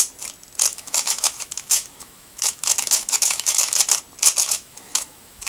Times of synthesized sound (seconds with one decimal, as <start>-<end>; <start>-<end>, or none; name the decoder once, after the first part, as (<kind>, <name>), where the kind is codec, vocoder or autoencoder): 0.7-3.8 (autoencoder, DAC-VAE); 4.4-5.5